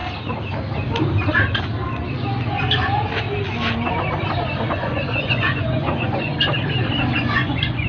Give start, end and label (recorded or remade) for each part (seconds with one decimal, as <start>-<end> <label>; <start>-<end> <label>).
0.0-4.7 recorded; 4.7-6.3 remade; 6.3-7.1 recorded; 7.1-7.9 remade